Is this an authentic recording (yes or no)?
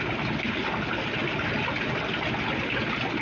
yes